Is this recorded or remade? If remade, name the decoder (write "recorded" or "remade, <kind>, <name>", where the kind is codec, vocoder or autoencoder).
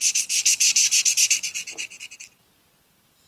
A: recorded